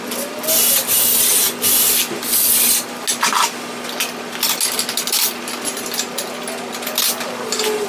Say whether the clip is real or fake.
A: real